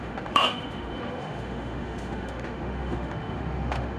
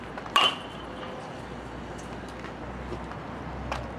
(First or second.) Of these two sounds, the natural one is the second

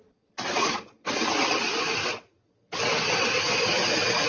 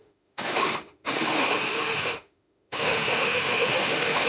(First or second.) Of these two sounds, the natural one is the first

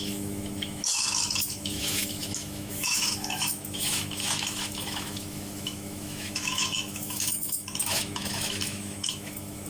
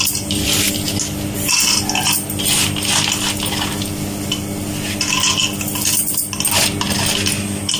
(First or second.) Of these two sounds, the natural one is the second